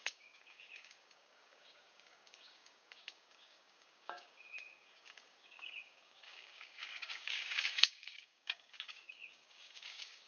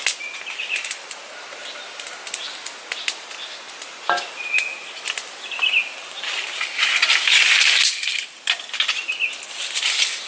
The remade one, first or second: first